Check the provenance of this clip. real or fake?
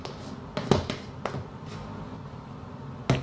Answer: real